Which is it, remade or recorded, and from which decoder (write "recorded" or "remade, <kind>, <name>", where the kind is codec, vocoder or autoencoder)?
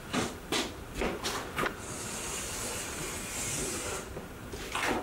recorded